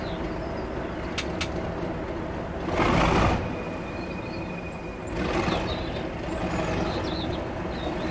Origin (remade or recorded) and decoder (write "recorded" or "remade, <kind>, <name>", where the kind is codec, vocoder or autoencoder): recorded